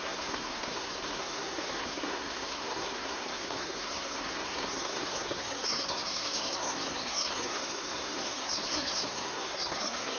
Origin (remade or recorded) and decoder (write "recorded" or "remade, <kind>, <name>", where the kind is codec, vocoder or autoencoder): remade, codec, SNAC